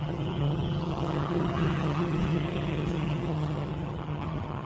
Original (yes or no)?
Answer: no